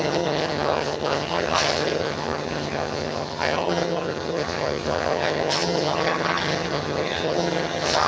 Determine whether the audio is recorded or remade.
remade